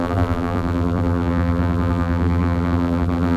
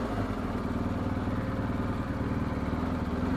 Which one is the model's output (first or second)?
first